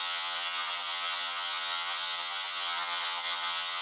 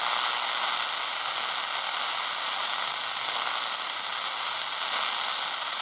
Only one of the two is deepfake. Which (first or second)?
first